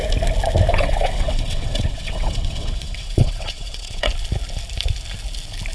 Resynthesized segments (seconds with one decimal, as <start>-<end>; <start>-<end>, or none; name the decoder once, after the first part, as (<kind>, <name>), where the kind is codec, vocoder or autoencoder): 0.7-4.1 (vocoder, WaveNeXt)